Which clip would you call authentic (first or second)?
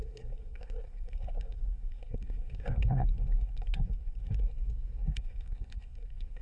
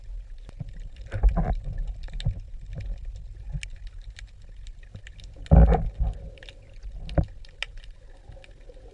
second